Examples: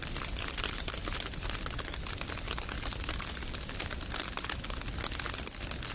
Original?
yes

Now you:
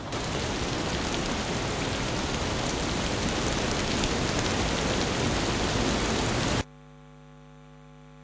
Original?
yes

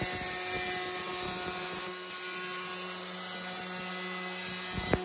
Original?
yes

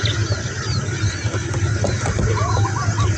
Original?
yes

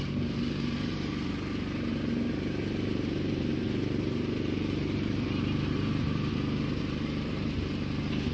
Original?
no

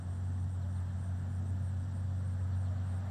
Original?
yes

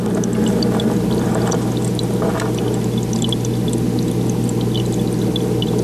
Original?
yes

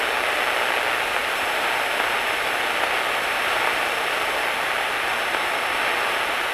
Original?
yes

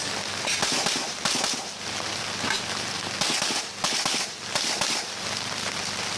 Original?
yes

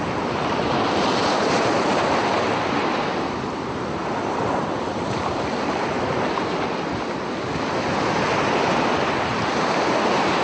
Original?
yes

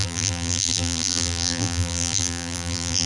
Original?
no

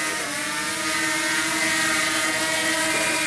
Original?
yes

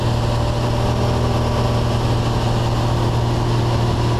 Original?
yes